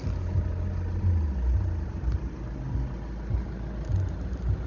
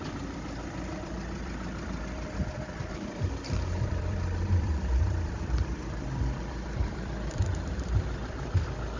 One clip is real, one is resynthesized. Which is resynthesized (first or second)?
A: second